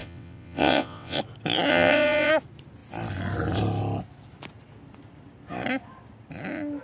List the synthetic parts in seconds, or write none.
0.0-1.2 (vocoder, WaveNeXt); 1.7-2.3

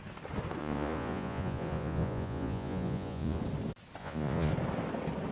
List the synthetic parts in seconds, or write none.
0.6-3.4 (vocoder, Vocos); 4.0-4.5

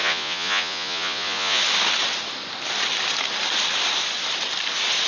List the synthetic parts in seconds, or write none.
0.0-1.6 (vocoder, Vocos)

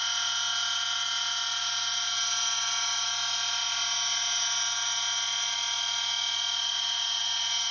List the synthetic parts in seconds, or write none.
none

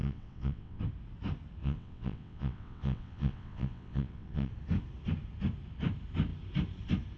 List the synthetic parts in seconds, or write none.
0.0-0.8 (vocoder, WaveNeXt); 1.6-4.5

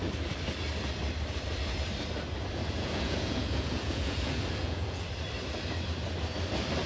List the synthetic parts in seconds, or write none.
2.6-5.1 (vocoder, Vocos)

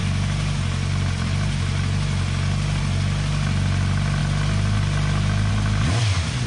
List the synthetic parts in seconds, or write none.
none